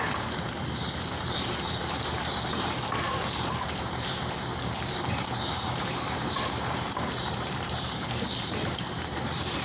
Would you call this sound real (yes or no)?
no